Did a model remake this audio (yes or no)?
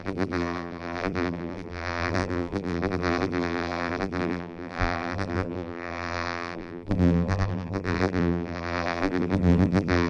yes